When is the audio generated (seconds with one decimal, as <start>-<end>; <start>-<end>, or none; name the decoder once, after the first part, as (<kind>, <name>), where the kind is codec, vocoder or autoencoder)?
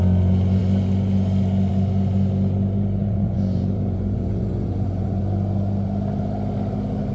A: 3.0-5.2 (vocoder, Vocos)